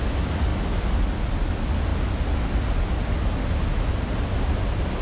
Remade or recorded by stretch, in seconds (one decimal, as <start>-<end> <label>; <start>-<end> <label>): 0.0-5.0 recorded